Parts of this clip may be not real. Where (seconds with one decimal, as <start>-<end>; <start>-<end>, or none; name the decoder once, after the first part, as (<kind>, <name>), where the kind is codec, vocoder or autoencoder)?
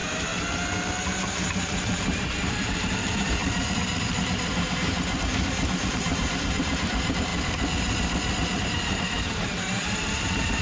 1.3-3.4 (vocoder, BigVGAN v2); 4.2-7.3; 8.6-10.6